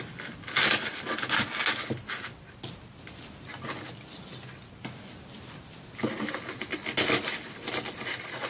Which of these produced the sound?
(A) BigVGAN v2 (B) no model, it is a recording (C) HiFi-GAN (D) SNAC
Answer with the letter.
B